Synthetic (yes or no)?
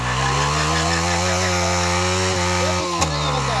no